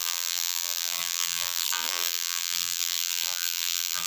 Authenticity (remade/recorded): remade